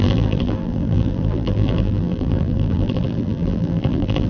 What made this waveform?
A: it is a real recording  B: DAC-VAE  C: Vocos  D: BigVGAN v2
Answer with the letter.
D